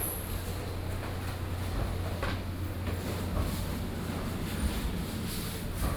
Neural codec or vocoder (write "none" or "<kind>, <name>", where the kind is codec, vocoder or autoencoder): none